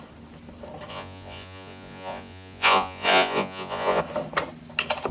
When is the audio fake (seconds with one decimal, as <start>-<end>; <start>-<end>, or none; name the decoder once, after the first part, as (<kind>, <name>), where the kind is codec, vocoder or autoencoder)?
0.9-4.0 (vocoder, Vocos)